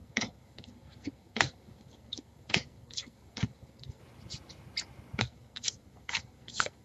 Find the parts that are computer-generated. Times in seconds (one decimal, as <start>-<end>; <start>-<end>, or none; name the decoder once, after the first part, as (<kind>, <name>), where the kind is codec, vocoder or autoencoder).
0.0-4.0 (codec, SNAC); 5.2-6.8